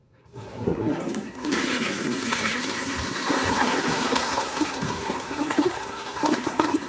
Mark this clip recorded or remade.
remade